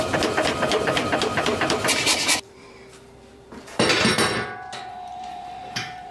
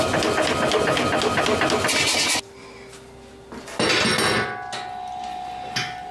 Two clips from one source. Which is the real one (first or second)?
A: second